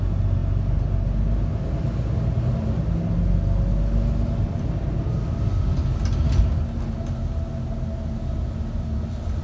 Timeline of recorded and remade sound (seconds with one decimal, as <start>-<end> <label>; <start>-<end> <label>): 0.0-9.4 recorded